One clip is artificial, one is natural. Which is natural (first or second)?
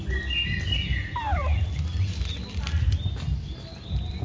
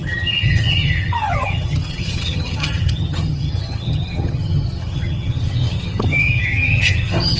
first